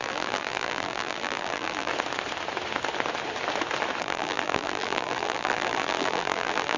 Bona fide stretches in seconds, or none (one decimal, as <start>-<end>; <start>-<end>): 1.9-4.0